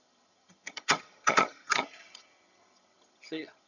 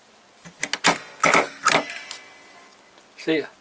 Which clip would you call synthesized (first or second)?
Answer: first